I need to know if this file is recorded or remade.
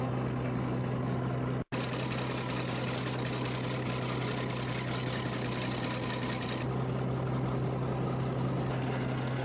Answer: recorded